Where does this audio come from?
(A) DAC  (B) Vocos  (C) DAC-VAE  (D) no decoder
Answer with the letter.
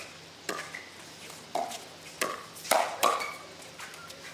D